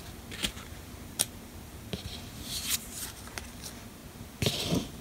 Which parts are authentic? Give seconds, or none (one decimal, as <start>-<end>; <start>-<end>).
0.0-0.4; 3.4-5.0